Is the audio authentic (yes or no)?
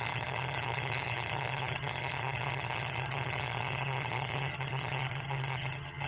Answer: no